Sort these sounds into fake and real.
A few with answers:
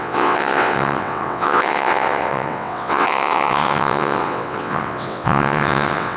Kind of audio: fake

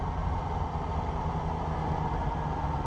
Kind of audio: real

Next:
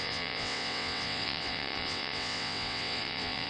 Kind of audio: fake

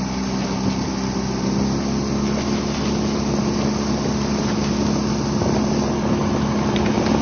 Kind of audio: real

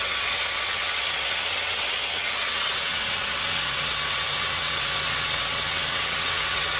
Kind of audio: fake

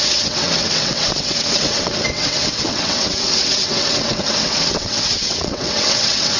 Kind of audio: fake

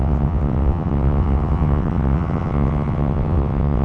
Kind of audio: fake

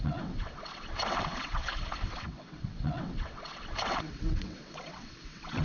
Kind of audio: fake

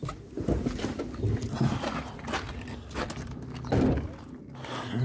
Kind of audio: real